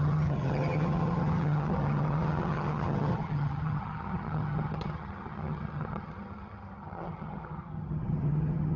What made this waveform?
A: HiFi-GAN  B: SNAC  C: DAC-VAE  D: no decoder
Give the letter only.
A